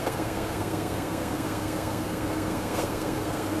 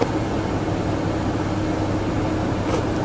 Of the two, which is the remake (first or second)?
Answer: first